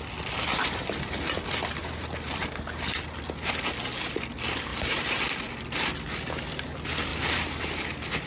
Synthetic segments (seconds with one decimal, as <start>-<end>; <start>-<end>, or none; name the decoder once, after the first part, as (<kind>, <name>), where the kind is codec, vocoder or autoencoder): 1.8-2.4 (vocoder, BigVGAN v2); 4.7-5.2; 7.1-7.7